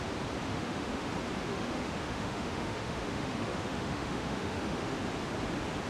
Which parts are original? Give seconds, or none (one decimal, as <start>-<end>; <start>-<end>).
0.0-0.5; 1.1-1.5; 5.0-5.9